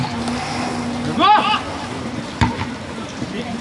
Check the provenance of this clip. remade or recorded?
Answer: remade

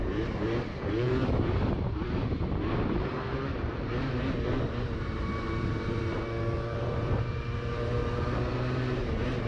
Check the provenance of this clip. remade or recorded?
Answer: remade